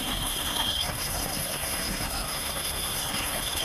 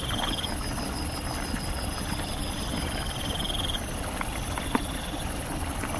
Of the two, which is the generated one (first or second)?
first